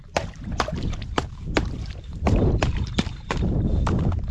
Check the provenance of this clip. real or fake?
fake